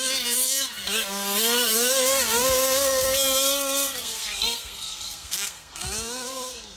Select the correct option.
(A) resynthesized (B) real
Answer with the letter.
A